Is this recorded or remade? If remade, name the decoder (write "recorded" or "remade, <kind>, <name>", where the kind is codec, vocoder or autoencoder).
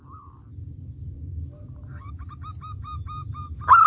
remade, vocoder, BigVGAN v2